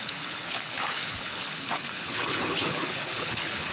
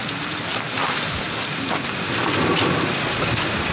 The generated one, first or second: first